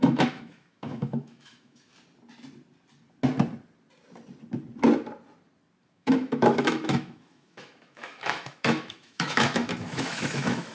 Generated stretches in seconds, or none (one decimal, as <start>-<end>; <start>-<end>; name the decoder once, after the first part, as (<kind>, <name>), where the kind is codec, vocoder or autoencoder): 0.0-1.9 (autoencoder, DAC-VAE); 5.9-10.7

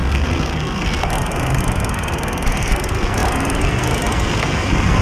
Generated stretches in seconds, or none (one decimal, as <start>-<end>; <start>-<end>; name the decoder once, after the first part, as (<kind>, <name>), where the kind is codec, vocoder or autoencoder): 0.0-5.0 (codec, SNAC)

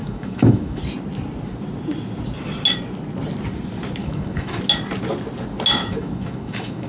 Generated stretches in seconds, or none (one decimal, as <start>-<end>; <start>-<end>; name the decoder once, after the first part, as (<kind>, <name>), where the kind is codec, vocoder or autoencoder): 0.0-0.8 (autoencoder, DAC-VAE); 4.0-4.6; 5.8-6.9